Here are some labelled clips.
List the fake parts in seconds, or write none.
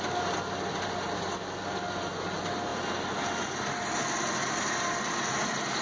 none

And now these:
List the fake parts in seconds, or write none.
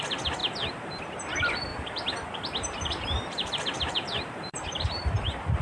0.4-1.0 (vocoder, BigVGAN v2); 1.7-5.1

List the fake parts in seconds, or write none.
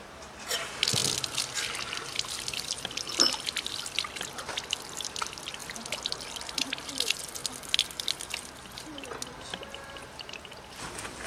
0.0-1.0 (vocoder, BigVGAN v2); 2.4-5.6; 6.3-7.4; 10.6-11.3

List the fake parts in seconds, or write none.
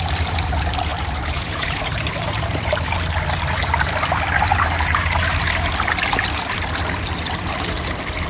0.9-2.9 (vocoder, BigVGAN v2); 4.5-5.7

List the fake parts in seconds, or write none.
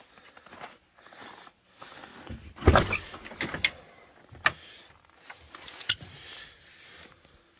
none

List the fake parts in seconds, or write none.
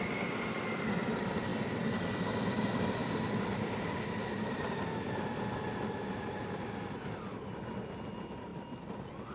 0.0-1.5 (vocoder, BigVGAN v2); 2.2-9.3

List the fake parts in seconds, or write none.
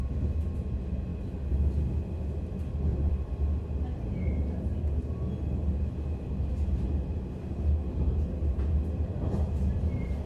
1.1-1.9 (vocoder, BigVGAN v2); 2.9-4.1